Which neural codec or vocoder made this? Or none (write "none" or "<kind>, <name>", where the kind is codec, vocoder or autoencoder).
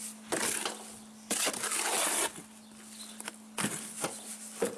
none